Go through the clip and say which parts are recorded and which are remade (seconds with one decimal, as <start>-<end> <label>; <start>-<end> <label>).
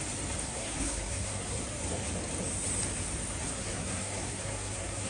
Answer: 0.0-0.4 recorded; 0.4-1.6 remade; 1.6-3.4 recorded; 3.4-5.1 remade